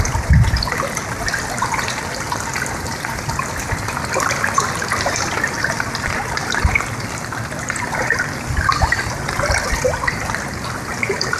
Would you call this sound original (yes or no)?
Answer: yes